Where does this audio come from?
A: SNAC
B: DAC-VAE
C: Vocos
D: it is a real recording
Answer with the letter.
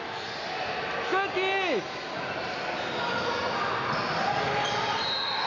D